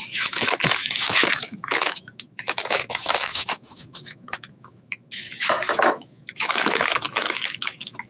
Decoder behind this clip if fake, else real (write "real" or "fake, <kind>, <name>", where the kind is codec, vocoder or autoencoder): fake, autoencoder, DAC-VAE